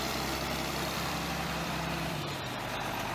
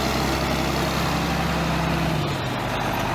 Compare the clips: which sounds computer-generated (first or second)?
first